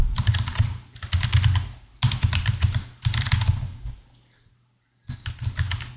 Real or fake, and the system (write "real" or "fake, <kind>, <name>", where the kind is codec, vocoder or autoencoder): real